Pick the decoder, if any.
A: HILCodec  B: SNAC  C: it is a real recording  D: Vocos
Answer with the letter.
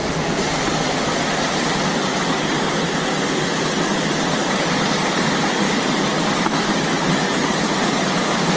C